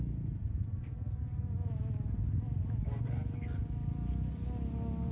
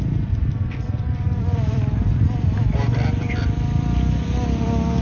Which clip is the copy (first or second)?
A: second